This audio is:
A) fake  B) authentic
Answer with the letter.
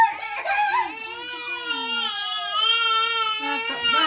B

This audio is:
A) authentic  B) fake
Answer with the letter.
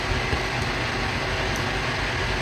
A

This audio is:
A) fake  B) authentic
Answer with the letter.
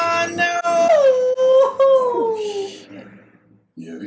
B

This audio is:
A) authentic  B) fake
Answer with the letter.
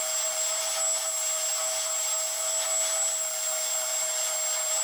A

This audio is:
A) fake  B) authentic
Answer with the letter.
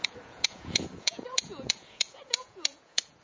A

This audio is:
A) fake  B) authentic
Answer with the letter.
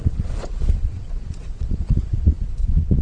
A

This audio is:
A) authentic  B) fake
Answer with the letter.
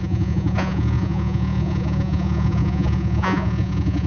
B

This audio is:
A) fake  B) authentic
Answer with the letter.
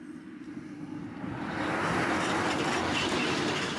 B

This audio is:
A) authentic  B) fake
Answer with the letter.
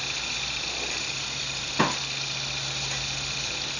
A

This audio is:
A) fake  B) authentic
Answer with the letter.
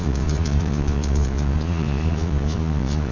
A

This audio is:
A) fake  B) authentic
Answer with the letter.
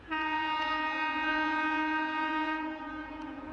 A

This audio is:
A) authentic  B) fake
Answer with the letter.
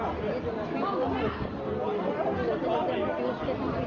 A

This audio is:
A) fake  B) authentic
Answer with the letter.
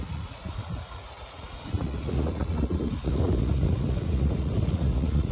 A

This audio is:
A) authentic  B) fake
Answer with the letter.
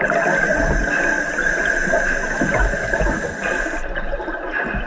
A